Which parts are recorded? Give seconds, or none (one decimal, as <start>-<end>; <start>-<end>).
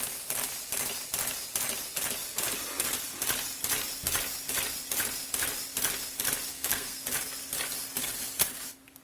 0.0-6.5; 7.0-9.0